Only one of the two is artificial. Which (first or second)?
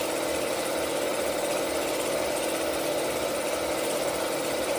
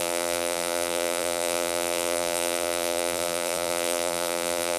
second